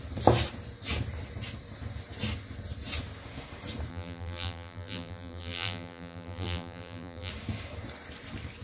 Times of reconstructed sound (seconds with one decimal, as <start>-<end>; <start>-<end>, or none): 3.9-7.3